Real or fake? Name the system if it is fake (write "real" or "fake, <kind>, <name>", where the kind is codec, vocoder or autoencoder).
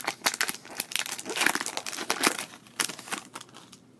real